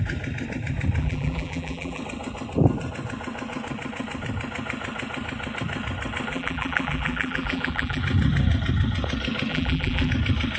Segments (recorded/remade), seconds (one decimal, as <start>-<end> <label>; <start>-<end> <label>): 0.0-1.0 recorded; 1.0-2.0 remade; 2.0-6.3 recorded; 6.3-8.0 remade; 8.0-9.5 recorded; 9.5-10.1 remade; 10.1-10.6 recorded